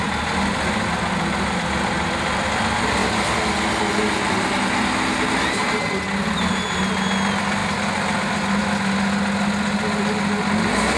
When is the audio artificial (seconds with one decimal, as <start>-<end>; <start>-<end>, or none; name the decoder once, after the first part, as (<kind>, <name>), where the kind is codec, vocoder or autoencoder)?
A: none